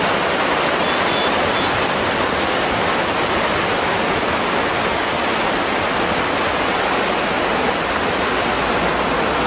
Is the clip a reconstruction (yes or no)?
no